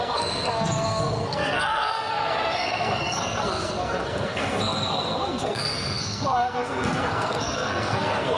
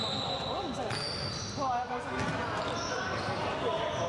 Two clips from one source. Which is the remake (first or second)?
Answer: first